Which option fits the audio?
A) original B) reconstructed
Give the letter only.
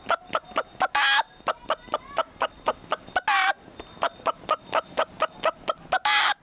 A